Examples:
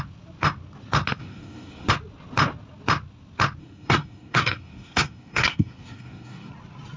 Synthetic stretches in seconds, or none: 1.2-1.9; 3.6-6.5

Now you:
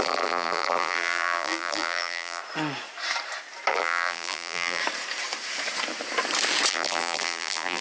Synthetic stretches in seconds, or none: 0.0-2.4; 3.7-4.8; 6.7-7.8

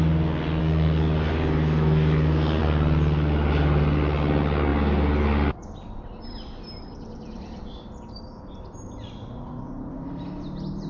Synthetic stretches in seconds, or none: 0.6-2.6

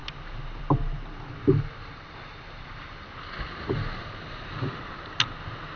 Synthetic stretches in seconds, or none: none

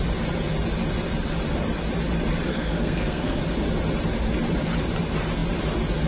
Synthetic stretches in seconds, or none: 2.5-3.4

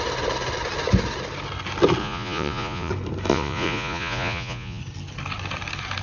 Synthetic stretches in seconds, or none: 2.0-2.9; 3.3-4.8

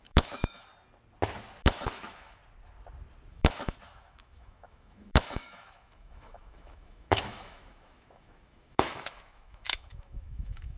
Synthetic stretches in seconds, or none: 0.0-0.7; 1.6-2.4; 3.3-10.8

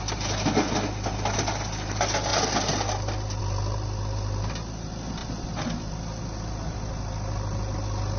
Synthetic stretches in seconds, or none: none